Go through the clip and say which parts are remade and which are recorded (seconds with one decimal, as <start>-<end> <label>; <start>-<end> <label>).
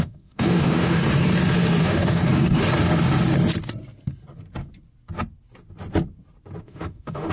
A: 0.0-1.0 remade; 1.0-1.8 recorded; 1.8-2.2 remade; 2.2-6.6 recorded; 6.6-7.3 remade